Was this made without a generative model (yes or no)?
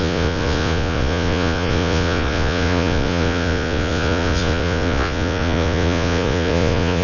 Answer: no